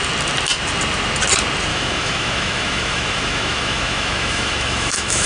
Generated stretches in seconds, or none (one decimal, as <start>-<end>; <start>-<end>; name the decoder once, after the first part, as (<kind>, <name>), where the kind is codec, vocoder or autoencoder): 1.7-5.3 (autoencoder, DAC-VAE)